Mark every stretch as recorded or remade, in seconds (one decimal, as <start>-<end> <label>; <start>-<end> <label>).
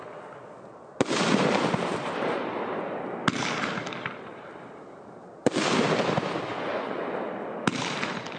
0.0-6.5 recorded; 6.5-7.0 remade; 7.0-8.4 recorded